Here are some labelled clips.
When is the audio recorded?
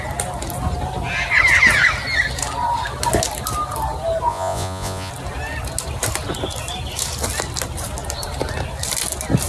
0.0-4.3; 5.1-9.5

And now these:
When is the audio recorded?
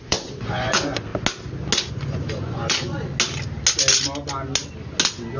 1.1-1.9; 3.1-5.4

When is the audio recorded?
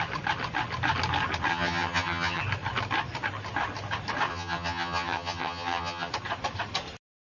0.0-1.5; 2.4-4.3; 6.1-7.2